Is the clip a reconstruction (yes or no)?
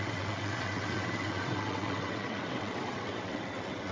yes